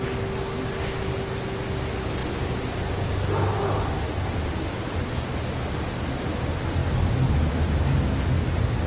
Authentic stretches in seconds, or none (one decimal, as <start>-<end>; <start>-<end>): 0.0-8.9